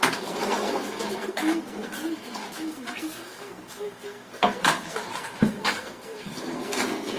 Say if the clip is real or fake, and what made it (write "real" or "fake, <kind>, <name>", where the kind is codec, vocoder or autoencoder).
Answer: fake, codec, SNAC